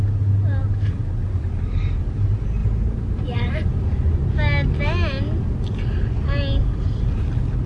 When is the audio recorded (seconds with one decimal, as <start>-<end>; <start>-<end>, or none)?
0.0-7.7